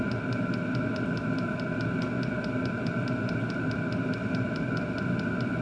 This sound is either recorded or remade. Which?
recorded